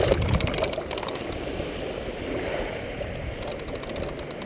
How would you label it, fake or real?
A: real